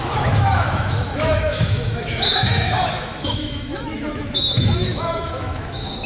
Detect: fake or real fake